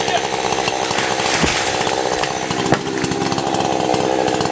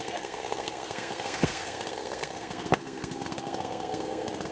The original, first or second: first